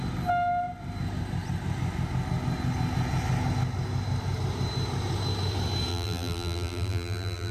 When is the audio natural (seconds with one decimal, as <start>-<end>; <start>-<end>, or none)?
0.0-5.9